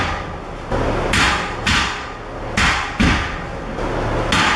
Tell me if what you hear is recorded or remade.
recorded